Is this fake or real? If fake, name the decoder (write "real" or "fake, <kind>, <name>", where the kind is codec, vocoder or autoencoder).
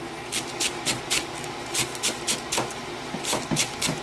real